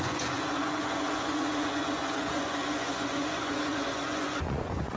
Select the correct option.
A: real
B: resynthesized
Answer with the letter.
B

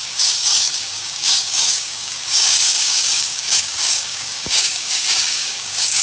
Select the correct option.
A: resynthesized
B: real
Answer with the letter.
A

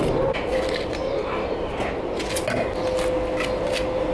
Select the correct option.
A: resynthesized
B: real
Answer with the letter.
B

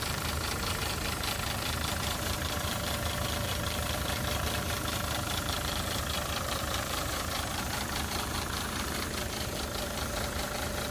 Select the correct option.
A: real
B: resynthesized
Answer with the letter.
B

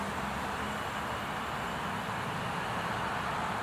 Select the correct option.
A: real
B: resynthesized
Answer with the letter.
A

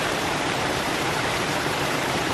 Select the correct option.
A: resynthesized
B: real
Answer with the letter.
A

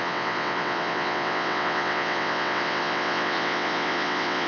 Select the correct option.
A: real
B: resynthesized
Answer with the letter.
B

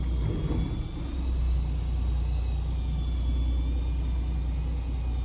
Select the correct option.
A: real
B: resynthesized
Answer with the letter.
A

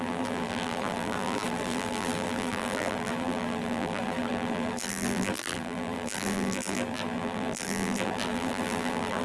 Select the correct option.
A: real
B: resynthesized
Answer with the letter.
B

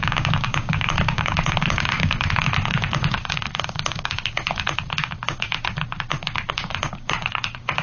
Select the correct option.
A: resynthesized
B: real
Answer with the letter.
A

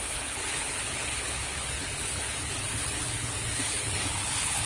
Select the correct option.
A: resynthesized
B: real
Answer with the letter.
A